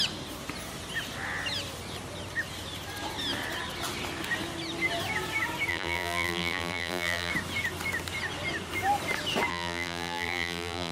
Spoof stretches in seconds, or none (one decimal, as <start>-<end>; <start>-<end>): 5.7-7.3; 9.5-10.9